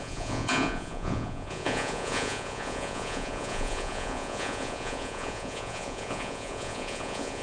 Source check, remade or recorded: remade